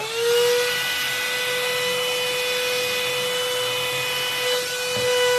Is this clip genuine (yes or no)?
yes